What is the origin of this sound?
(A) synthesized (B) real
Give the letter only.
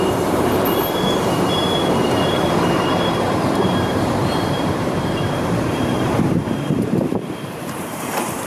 A